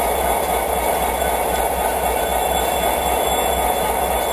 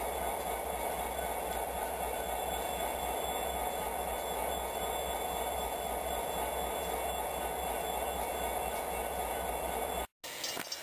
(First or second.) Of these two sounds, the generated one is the first